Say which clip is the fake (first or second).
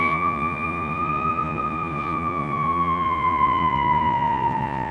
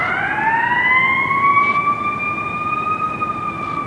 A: first